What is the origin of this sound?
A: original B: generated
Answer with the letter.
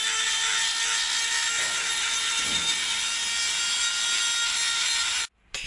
A